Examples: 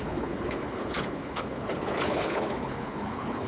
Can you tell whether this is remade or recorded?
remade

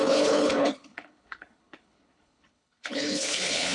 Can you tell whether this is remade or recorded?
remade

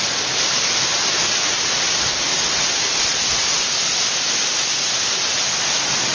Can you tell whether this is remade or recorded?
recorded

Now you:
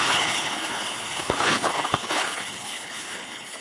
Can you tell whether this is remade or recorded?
remade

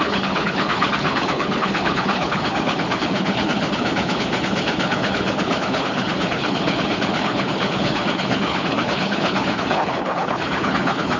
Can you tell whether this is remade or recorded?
remade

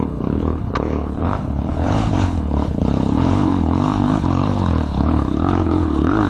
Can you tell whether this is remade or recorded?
remade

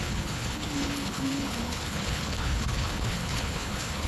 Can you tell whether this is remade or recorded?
remade